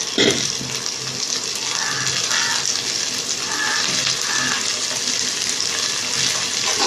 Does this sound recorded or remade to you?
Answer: recorded